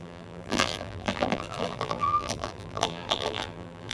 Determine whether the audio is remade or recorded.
remade